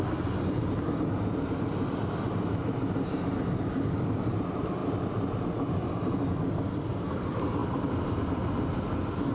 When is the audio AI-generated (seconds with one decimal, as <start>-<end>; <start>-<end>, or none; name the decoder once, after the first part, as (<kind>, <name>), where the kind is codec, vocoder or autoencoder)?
none